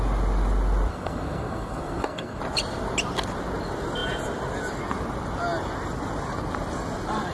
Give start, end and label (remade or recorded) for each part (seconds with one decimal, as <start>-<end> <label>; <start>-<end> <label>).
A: 0.0-0.9 recorded; 0.9-2.4 remade; 2.4-7.3 recorded